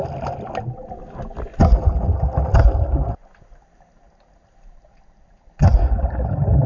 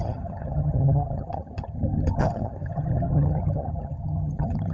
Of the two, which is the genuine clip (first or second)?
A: first